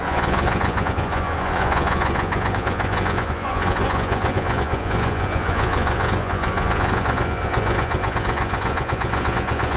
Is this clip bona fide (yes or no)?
no